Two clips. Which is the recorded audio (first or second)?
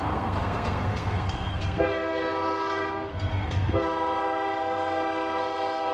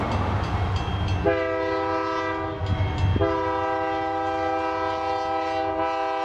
second